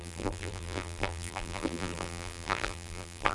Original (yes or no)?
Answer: no